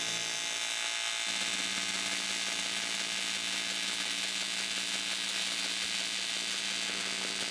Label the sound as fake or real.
real